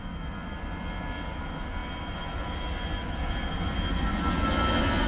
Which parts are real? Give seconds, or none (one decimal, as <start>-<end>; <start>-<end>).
0.0-5.1

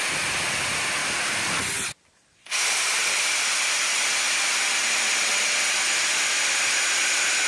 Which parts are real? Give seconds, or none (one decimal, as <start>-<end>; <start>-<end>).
0.0-3.0; 6.7-7.5

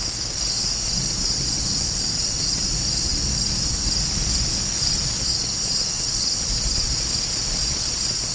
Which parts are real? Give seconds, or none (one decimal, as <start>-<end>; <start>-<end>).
0.0-8.3

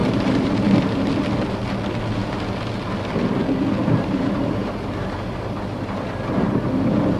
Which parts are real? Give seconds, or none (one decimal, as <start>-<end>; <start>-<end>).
1.1-3.8; 6.6-7.2

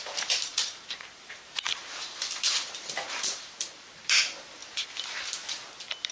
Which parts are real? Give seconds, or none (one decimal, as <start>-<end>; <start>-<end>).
0.0-0.5; 4.0-6.1

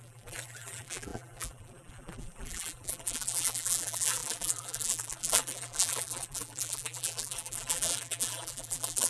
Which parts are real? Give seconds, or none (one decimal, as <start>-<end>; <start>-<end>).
none

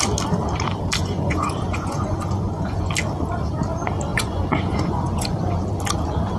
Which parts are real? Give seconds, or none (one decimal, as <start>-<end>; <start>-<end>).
0.0-1.0; 2.9-4.1; 5.7-6.4

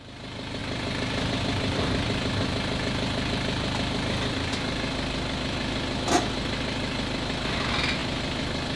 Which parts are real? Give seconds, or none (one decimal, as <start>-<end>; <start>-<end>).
0.0-0.6; 4.5-8.8